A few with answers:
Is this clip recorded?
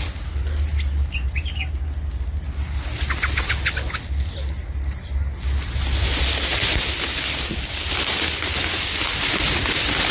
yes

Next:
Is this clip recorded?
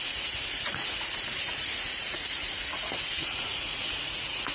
no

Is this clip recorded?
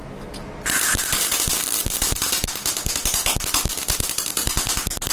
yes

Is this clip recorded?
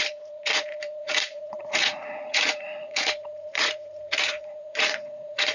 no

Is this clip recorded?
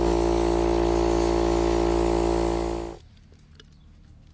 yes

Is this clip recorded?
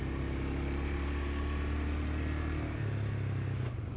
yes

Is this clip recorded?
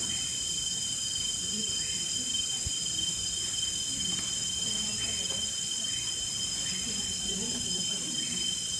yes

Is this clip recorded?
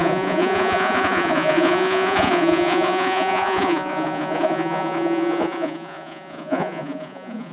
no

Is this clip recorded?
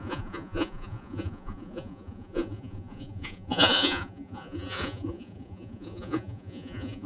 no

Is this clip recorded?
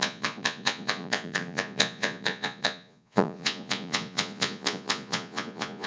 no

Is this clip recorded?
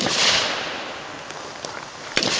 yes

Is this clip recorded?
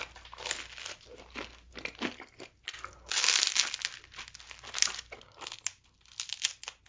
yes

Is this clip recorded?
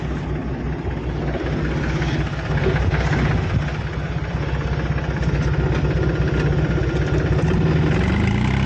yes